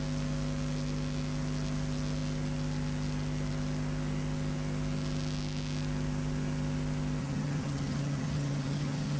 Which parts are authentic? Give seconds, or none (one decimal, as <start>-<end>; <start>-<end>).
0.0-7.2